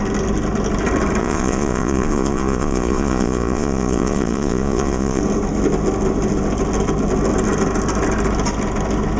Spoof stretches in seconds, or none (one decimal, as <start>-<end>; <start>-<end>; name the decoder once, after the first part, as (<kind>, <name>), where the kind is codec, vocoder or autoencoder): 1.2-5.2 (vocoder, Vocos)